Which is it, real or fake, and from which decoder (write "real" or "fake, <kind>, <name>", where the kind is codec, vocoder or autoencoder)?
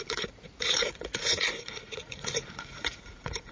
fake, vocoder, Vocos